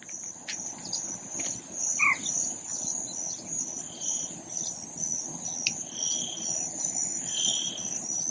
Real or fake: real